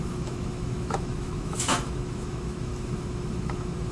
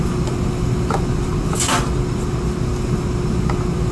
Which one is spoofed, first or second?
first